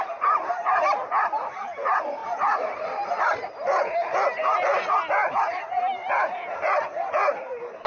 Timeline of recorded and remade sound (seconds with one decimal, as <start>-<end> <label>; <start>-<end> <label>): 0.0-2.2 recorded; 2.2-3.2 remade; 3.2-7.9 recorded